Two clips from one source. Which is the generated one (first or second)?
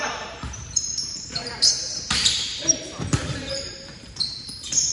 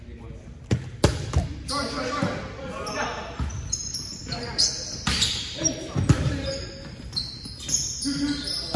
first